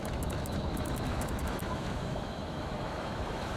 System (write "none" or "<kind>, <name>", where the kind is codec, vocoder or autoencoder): autoencoder, DAC-VAE